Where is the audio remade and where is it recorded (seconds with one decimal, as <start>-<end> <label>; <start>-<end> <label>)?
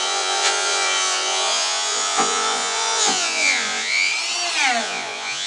0.0-4.1 remade; 4.1-4.8 recorded; 4.8-5.5 remade